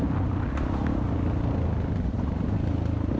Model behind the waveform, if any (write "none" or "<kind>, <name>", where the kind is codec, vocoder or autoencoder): none